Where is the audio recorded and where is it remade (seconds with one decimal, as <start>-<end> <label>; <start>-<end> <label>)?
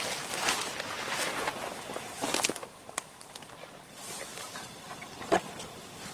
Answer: 0.0-2.7 recorded; 2.7-3.3 remade; 3.3-4.3 recorded; 4.3-5.3 remade; 5.3-6.1 recorded